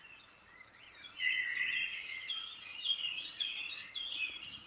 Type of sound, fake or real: fake